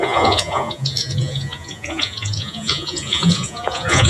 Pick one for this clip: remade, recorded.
remade